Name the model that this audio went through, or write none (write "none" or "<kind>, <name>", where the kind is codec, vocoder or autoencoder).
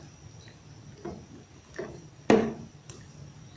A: none